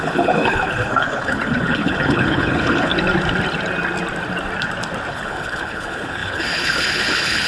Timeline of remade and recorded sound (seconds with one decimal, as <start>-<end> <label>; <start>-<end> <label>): 0.0-2.9 remade; 2.9-5.1 recorded; 5.1-7.5 remade